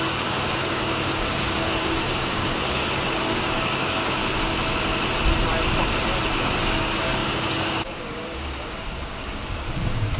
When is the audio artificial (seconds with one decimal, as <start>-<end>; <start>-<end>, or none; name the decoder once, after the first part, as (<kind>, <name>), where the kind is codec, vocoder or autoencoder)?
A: 0.0-4.2 (codec, DAC); 6.4-10.2